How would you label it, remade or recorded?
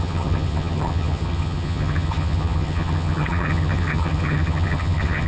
remade